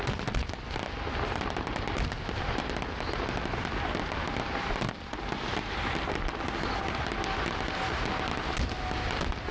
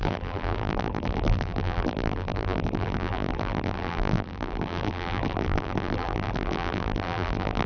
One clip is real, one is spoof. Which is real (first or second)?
first